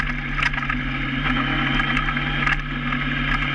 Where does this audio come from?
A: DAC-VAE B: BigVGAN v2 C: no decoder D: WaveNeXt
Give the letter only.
C